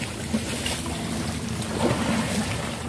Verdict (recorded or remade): recorded